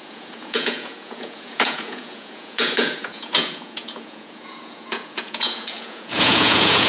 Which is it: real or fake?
fake